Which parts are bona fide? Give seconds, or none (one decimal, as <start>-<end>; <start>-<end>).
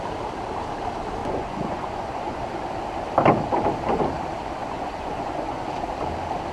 0.0-1.2; 2.4-4.6; 5.6-6.5